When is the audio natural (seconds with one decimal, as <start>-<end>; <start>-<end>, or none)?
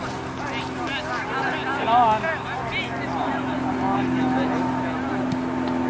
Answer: 0.0-5.9